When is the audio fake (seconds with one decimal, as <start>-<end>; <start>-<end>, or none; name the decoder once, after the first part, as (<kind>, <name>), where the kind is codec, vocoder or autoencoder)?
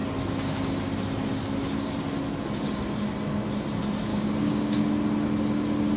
4.1-4.8 (codec, DAC)